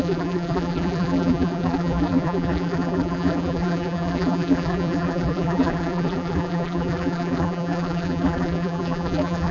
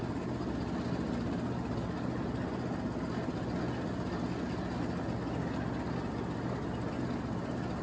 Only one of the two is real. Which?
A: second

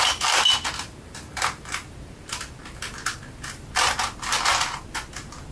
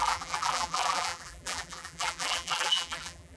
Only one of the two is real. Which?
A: first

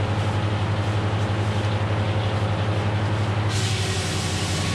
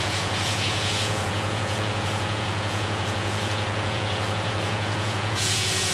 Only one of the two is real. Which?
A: first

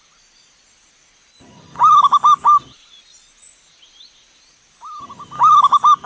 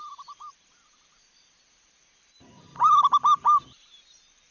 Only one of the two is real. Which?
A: first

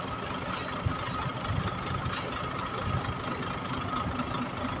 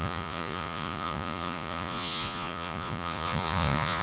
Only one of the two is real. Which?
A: first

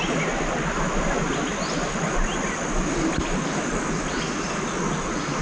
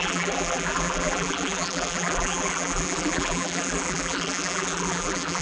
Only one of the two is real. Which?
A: first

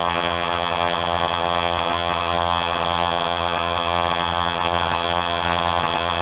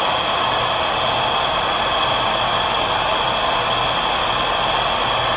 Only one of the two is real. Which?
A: second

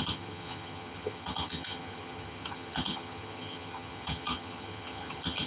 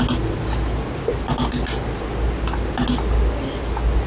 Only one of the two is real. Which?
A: second